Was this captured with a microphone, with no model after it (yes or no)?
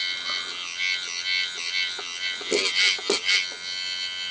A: yes